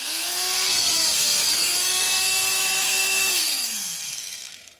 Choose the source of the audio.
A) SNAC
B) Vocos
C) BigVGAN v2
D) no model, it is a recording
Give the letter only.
A